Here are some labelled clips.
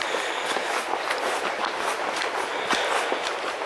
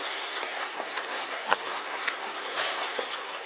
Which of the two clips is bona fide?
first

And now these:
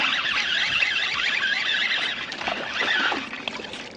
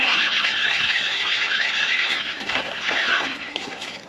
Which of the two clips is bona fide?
first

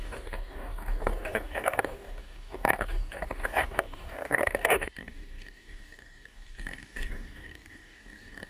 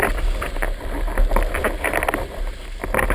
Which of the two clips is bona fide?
second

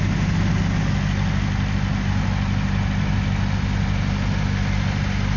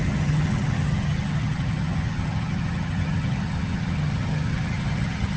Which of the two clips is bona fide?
first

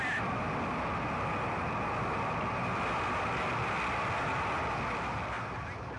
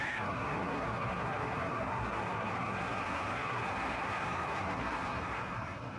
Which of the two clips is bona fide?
first